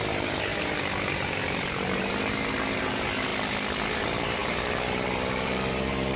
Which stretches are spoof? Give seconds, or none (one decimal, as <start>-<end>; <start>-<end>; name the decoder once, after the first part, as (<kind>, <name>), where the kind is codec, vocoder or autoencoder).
0.0-3.3 (vocoder, BigVGAN v2); 3.9-6.2